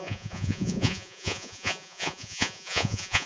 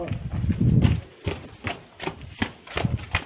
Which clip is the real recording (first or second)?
second